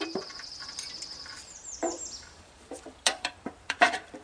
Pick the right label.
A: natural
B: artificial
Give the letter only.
B